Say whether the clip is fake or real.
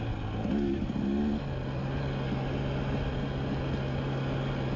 real